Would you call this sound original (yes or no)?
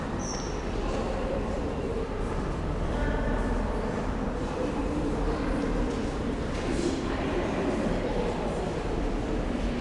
no